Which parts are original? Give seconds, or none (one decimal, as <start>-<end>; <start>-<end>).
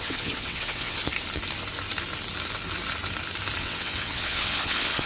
1.0-3.6